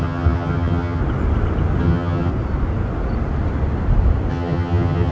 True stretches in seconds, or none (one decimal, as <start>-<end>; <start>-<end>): 1.0-1.8; 2.3-4.3